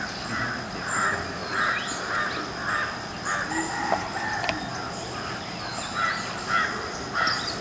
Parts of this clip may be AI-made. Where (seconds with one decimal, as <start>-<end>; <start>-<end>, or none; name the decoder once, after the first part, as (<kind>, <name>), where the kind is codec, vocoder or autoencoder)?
none

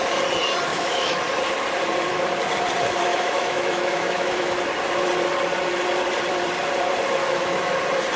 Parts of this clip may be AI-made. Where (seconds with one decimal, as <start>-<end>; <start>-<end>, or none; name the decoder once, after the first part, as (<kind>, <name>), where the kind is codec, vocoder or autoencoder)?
0.7-1.2 (autoencoder, DAC-VAE); 3.1-4.6; 7.2-7.7

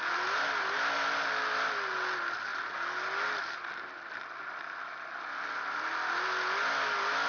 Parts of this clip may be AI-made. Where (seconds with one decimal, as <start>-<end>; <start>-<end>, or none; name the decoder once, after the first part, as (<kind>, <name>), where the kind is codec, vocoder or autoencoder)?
none

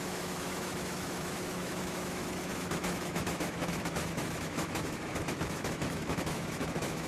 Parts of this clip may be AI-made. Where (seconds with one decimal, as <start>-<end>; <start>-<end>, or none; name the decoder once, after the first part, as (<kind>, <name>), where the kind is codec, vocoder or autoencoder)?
0.0-7.1 (autoencoder, DAC-VAE)